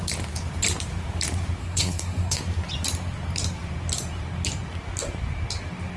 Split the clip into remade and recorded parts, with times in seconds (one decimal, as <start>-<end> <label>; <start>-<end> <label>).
0.0-1.6 recorded; 1.6-2.4 remade; 2.4-6.0 recorded